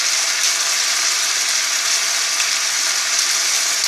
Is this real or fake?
real